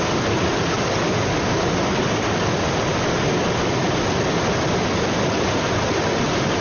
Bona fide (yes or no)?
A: yes